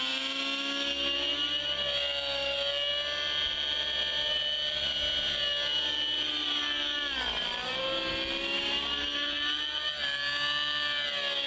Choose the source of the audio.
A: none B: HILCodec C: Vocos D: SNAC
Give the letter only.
A